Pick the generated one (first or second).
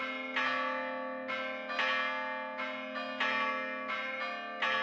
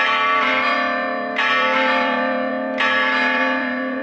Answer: second